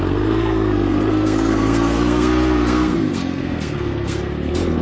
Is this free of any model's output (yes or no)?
no